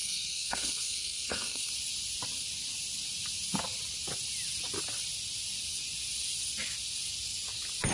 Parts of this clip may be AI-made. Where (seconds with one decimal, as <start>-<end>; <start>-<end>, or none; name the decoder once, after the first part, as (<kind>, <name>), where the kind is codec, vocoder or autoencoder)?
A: 0.0-1.7 (codec, SNAC)